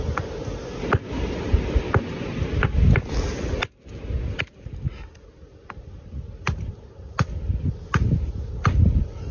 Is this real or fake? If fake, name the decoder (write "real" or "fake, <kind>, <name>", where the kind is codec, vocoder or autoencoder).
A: real